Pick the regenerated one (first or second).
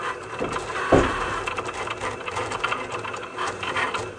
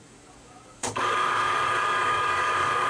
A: second